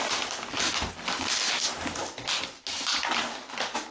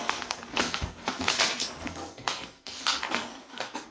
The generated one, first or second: second